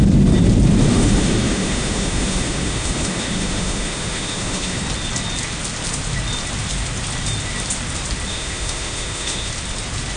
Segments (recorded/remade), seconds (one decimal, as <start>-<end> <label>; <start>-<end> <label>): 0.0-0.9 recorded; 0.9-4.8 remade; 4.8-8.3 recorded; 8.3-9.5 remade; 9.5-10.2 recorded